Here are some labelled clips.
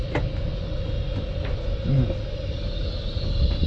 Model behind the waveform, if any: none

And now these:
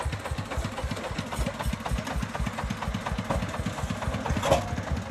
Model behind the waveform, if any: none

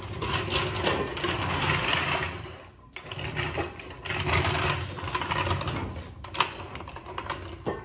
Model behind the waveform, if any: none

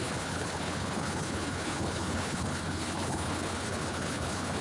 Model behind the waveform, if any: codec, HILCodec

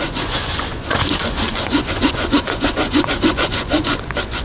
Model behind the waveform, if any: vocoder, Vocos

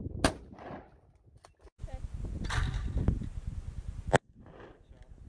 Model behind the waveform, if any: none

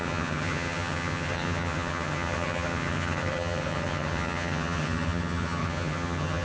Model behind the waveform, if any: vocoder, HiFi-GAN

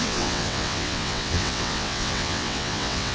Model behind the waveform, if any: vocoder, WaveNeXt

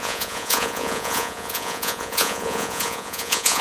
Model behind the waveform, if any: vocoder, Vocos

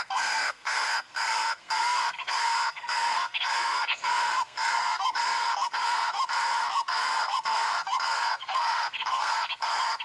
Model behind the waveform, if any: codec, SNAC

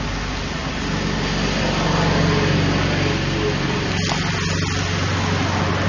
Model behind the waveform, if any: none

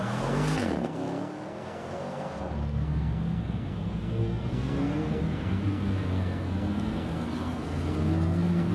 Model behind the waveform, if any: codec, SNAC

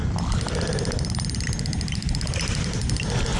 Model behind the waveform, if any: none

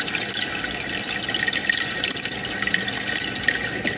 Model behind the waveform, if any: none